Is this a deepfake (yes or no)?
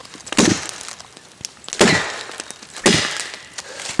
no